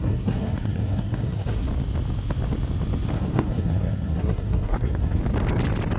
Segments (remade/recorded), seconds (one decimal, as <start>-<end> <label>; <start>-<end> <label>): 0.0-1.7 remade; 1.7-3.1 recorded; 3.1-5.2 remade; 5.2-6.0 recorded

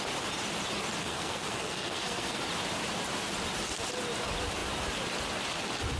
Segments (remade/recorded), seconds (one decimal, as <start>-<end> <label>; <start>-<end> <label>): 0.0-1.0 recorded; 1.0-2.4 remade; 2.4-6.0 recorded

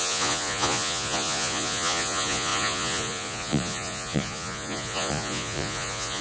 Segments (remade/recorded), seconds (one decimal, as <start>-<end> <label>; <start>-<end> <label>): 0.0-6.2 remade